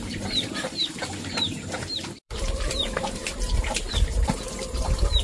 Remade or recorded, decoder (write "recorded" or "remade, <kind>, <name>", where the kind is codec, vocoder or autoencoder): remade, vocoder, BigVGAN v2